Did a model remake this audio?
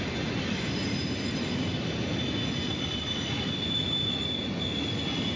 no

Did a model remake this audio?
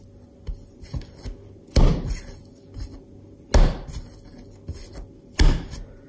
no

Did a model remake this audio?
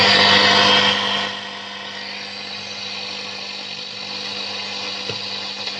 no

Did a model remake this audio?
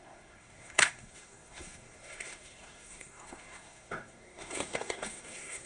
yes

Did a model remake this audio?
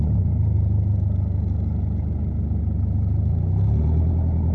no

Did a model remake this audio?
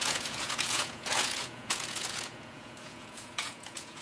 yes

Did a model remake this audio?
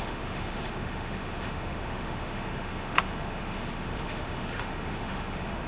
yes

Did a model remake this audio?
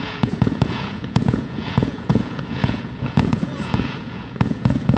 yes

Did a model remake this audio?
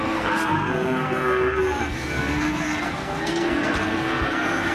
yes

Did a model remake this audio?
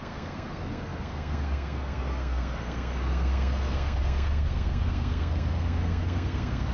yes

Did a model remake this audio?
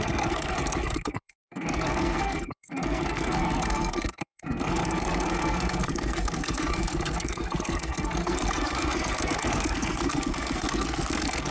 yes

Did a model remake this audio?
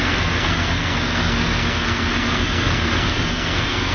yes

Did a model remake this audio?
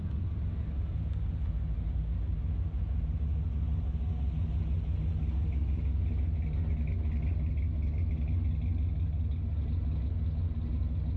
no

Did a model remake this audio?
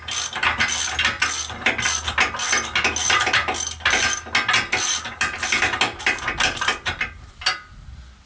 no